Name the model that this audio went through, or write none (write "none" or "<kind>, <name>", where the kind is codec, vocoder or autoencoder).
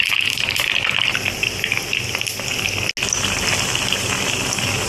none